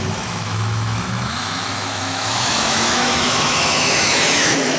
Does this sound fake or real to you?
fake